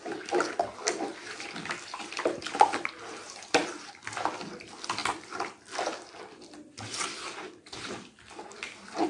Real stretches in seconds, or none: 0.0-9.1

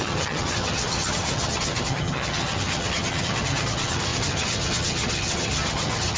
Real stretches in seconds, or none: none

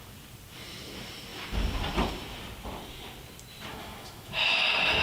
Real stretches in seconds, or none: 0.0-3.7; 4.6-5.0

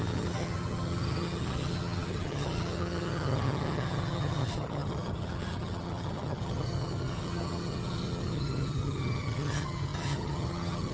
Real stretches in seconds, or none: none

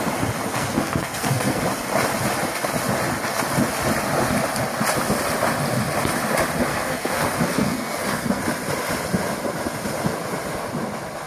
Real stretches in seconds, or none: 0.0-0.5; 1.6-6.7; 8.4-11.3